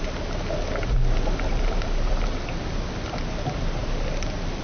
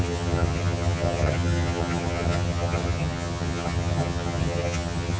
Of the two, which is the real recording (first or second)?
first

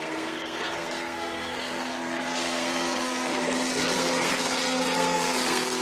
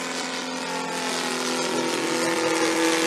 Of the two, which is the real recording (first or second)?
second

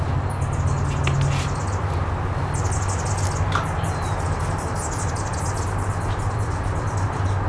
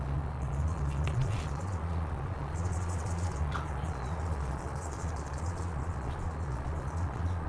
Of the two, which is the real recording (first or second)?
first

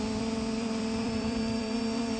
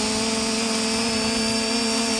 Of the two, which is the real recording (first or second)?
second